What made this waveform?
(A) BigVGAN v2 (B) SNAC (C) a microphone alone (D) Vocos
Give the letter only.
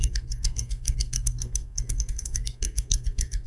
B